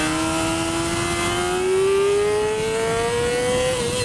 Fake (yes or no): no